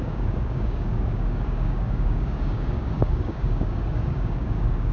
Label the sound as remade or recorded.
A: remade